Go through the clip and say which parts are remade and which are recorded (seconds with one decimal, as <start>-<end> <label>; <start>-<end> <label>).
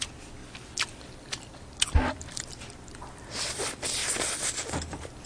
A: 0.0-0.4 remade; 0.4-1.5 recorded; 1.5-4.0 remade; 4.0-5.3 recorded